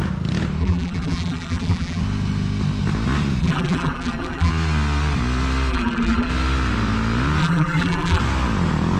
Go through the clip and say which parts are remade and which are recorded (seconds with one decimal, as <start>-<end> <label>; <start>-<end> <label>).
0.0-0.6 recorded; 0.6-2.0 remade; 2.0-3.4 recorded; 3.4-4.5 remade; 4.5-5.7 recorded; 5.7-6.3 remade; 6.3-7.4 recorded; 7.4-8.2 remade; 8.2-9.0 recorded